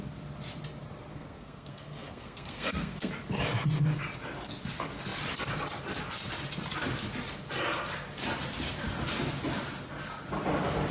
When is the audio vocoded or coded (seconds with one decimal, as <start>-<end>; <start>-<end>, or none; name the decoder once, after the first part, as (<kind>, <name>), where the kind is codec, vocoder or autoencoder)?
1.1-3.1 (codec, SNAC)